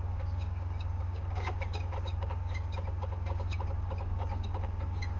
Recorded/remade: remade